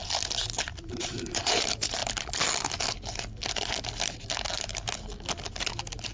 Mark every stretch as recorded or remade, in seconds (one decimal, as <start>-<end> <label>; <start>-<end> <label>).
0.0-0.9 recorded; 0.9-2.0 remade; 2.0-6.1 recorded